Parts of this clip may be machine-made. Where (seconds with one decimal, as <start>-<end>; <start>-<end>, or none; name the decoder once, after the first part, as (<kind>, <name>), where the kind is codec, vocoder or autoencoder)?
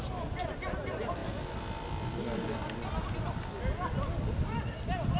none